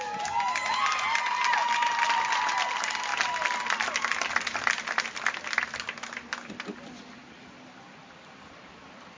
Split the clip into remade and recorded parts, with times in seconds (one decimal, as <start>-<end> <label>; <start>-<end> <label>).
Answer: 0.0-1.6 remade; 1.6-2.7 recorded; 2.7-3.1 remade; 3.1-6.5 recorded; 6.5-7.2 remade; 7.2-8.1 recorded; 8.1-9.2 remade